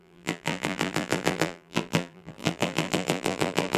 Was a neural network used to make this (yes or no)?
yes